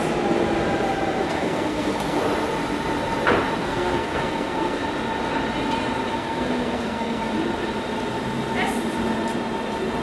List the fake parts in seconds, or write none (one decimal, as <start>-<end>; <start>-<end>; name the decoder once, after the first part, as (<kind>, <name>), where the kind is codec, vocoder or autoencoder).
1.2-2.2 (codec, SNAC); 3.6-4.8; 6.1-7.2